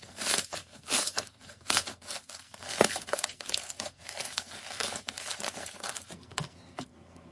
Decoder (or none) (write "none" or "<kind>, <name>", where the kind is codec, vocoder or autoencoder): codec, SNAC